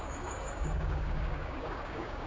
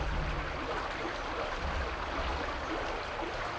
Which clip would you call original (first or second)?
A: second